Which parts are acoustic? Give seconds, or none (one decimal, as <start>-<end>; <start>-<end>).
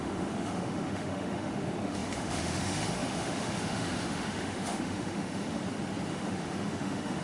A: 5.6-6.1